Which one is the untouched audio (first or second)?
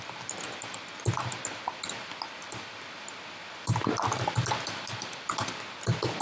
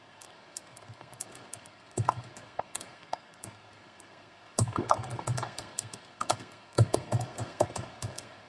first